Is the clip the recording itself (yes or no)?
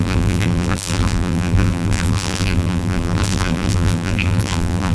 no